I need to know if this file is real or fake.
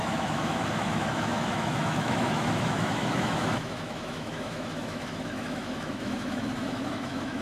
fake